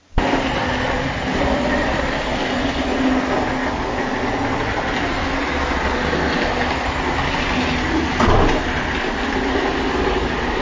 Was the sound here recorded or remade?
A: recorded